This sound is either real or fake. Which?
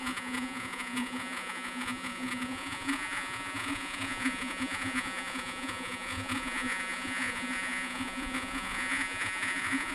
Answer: fake